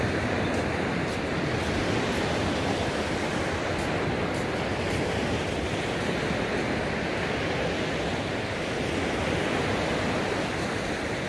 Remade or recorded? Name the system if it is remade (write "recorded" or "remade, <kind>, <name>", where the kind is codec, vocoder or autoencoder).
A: recorded